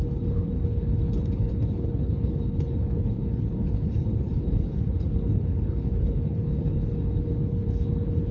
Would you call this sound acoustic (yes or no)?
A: no